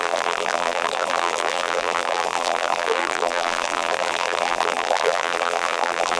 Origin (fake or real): fake